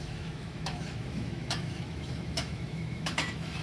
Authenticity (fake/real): fake